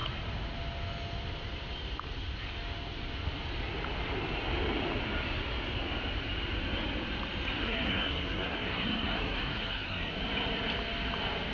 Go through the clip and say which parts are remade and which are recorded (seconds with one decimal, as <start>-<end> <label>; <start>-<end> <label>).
0.0-7.6 recorded; 7.6-10.1 remade; 10.1-11.5 recorded